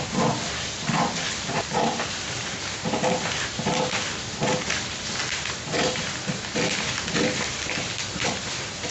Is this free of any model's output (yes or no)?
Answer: yes